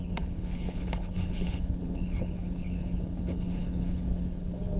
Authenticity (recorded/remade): remade